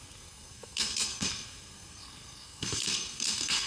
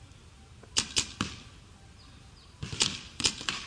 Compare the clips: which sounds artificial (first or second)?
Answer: first